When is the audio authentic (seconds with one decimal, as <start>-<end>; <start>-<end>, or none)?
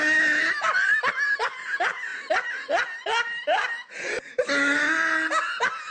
0.0-5.9